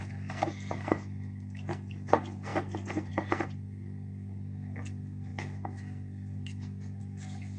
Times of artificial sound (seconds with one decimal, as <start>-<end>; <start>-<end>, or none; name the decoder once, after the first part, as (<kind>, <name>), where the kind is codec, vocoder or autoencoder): 0.0-7.6 (codec, SNAC)